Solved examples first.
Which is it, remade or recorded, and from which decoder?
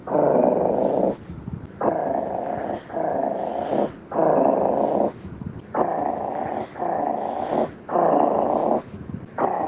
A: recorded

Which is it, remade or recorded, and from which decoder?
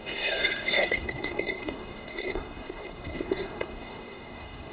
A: remade, codec, SNAC